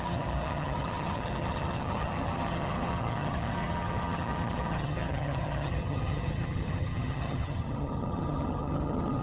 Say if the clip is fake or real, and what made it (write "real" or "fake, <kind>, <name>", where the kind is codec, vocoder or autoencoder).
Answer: fake, vocoder, HiFi-GAN